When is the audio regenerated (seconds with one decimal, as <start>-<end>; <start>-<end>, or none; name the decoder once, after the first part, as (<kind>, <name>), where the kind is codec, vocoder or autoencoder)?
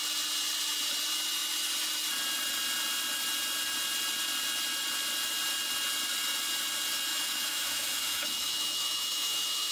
7.1-9.7 (autoencoder, DAC-VAE)